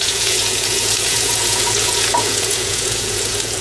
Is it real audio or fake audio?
fake